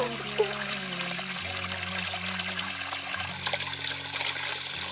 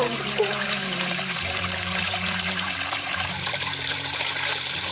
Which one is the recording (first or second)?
first